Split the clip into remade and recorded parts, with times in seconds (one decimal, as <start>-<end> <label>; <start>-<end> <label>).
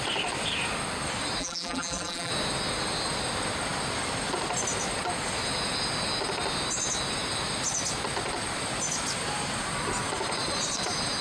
0.0-1.4 recorded; 1.4-2.3 remade; 2.3-11.2 recorded